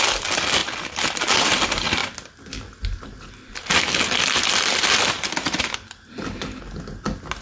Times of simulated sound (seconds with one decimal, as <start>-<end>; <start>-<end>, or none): none